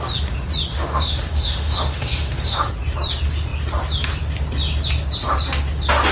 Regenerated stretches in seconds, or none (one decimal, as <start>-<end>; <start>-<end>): 0.7-2.7